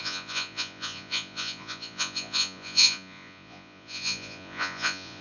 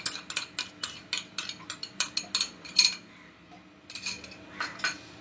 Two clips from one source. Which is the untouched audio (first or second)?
second